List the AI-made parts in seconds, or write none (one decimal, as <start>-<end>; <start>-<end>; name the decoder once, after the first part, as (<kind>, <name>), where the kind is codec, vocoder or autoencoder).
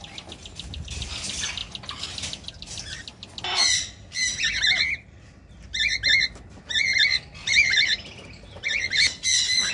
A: none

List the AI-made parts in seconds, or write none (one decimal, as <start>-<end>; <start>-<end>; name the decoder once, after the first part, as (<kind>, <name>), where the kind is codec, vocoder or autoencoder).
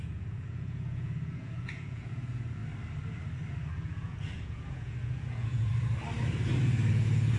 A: 0.0-2.6 (vocoder, Vocos); 3.7-5.7; 6.9-7.4